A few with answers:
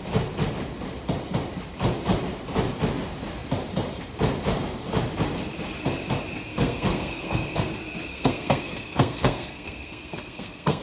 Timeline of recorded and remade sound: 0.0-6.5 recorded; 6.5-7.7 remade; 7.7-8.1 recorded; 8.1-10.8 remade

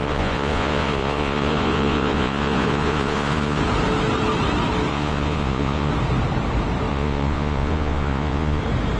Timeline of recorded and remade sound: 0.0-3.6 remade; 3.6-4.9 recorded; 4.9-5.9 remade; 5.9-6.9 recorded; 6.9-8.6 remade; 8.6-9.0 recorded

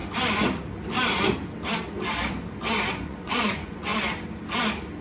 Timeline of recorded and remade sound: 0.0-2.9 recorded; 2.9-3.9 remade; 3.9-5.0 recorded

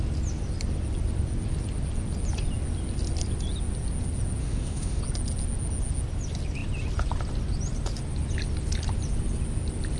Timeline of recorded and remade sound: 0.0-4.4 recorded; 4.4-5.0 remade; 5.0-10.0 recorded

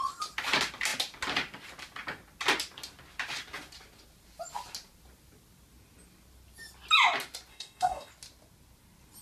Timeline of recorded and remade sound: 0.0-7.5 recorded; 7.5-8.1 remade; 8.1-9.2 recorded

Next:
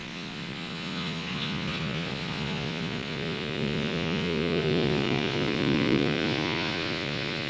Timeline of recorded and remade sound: 0.0-7.5 remade